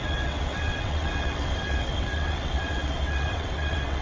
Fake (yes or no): yes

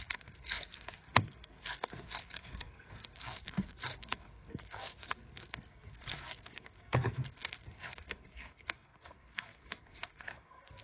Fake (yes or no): yes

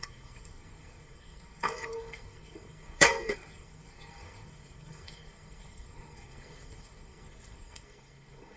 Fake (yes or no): yes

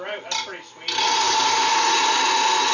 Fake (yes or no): no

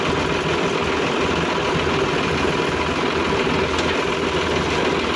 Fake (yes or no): no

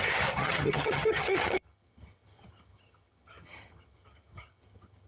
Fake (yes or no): yes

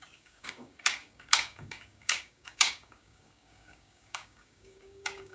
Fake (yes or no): yes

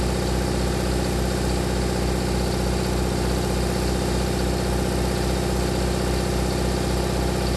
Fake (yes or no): no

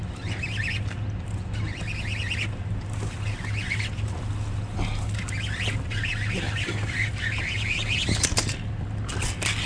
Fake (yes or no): no